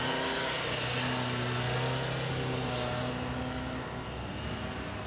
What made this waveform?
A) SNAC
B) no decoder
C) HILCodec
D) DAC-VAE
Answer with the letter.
B